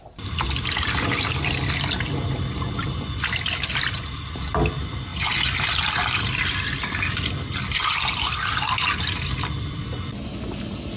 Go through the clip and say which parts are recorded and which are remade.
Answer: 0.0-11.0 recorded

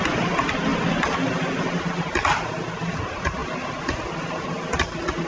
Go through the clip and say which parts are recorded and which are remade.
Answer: 0.0-5.3 recorded

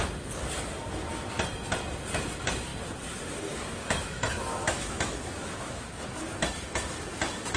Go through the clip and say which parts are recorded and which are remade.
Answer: 0.0-3.8 recorded; 3.8-5.9 remade; 5.9-7.6 recorded